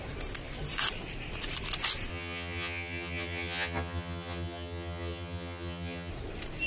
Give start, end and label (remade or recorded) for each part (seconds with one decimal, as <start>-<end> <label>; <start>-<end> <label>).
0.0-2.1 recorded; 2.1-6.1 remade; 6.1-6.7 recorded